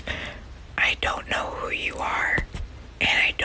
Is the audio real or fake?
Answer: real